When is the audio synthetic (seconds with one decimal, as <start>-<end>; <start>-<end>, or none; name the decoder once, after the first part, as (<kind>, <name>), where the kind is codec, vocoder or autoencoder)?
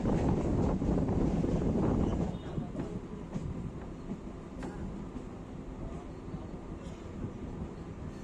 0.5-1.5 (vocoder, BigVGAN v2)